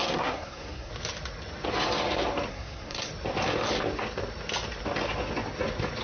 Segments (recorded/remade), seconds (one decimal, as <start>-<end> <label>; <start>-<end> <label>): 0.0-0.9 remade; 0.9-2.5 recorded; 2.5-3.1 remade; 3.1-6.0 recorded